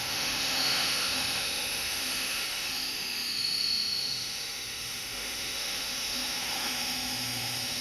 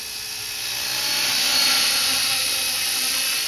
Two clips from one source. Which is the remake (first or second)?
first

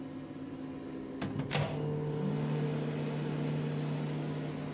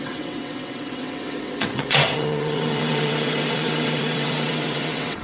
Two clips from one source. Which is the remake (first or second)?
second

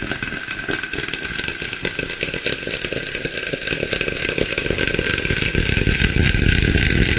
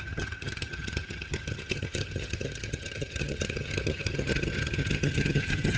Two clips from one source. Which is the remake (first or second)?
second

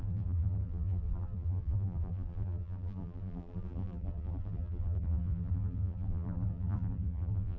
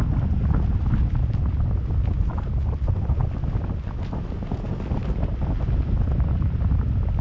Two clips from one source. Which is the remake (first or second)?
first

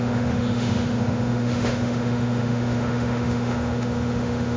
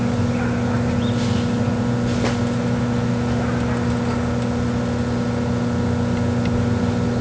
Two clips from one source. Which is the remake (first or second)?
first